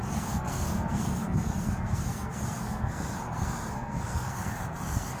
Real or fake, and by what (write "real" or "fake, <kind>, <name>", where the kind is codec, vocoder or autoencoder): fake, codec, SNAC